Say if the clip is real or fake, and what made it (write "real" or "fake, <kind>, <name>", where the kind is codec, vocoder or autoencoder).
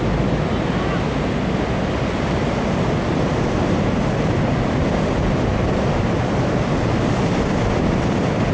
real